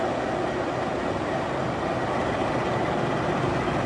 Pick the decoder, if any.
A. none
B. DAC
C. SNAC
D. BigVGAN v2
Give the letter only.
A